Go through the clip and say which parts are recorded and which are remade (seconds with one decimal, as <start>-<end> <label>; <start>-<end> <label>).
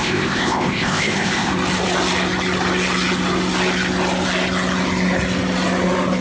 0.0-1.5 remade; 1.5-6.2 recorded